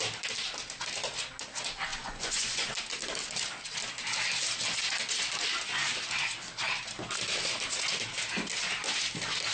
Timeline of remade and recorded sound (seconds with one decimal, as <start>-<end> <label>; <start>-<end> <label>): 0.0-1.9 recorded; 1.9-2.7 remade; 2.7-9.5 recorded